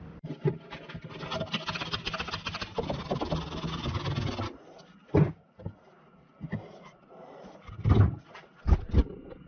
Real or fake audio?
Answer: real